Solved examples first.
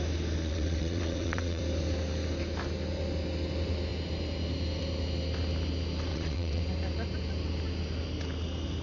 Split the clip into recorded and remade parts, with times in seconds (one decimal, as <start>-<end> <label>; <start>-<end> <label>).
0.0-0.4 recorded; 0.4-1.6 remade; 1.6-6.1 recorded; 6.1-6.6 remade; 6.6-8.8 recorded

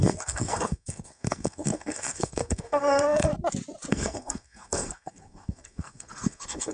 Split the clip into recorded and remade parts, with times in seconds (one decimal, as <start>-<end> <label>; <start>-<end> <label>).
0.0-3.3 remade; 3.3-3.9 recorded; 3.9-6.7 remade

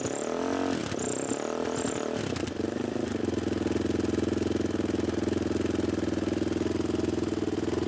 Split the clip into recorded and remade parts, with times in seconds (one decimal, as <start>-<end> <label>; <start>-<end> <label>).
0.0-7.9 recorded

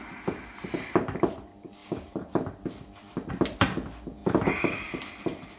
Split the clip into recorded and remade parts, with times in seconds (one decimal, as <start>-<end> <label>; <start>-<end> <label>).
0.0-1.8 recorded; 1.8-3.3 remade; 3.3-4.2 recorded; 4.2-5.0 remade; 5.0-5.6 recorded

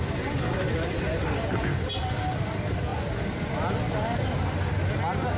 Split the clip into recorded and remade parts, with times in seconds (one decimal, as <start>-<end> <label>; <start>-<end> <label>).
0.0-5.4 recorded

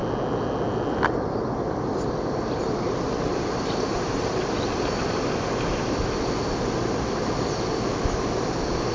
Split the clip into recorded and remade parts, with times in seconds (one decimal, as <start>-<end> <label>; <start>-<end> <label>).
0.0-3.3 recorded; 3.3-5.0 remade; 5.0-8.9 recorded

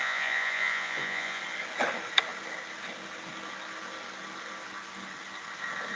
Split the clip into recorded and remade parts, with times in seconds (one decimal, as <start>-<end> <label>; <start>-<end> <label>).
0.0-1.4 remade; 1.4-6.0 recorded

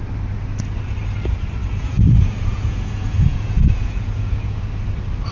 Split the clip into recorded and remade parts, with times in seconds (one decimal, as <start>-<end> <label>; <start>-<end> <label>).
0.0-1.6 recorded; 1.6-4.6 remade; 4.6-5.3 recorded